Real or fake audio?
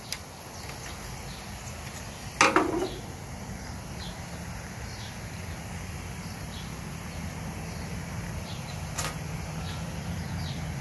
real